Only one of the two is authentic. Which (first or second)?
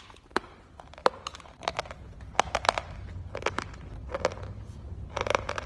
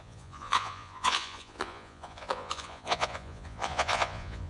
first